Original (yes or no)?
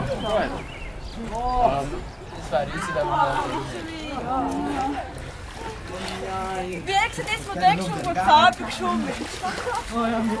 yes